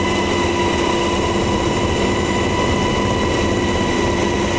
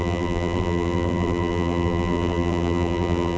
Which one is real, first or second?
first